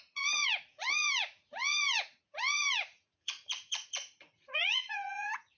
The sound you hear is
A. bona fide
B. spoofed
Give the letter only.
B